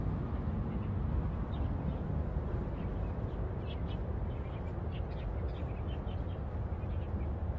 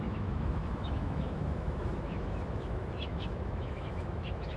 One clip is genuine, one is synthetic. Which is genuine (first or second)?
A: first